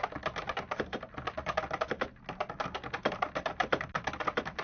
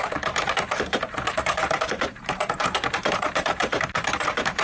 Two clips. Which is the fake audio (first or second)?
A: second